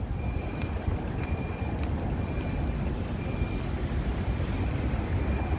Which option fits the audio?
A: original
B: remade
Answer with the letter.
A